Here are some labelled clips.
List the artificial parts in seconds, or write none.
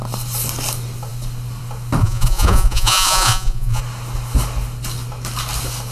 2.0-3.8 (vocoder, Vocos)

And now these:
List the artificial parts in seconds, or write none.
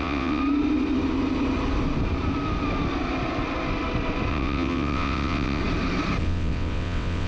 0.0-0.4 (vocoder, WaveNeXt); 4.3-5.6; 6.2-7.3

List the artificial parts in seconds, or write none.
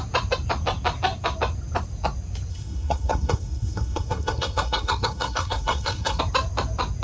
2.5-6.2 (codec, SNAC)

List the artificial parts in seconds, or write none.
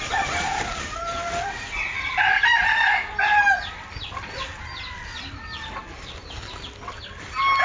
none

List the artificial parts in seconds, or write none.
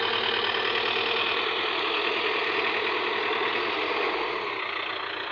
2.4-3.1 (vocoder, BigVGAN v2)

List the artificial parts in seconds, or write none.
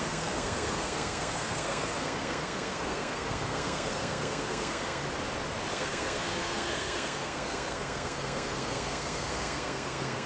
0.0-5.0 (codec, SNAC); 5.7-10.3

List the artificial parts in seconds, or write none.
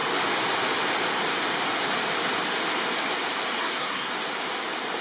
3.6-4.1 (codec, SNAC)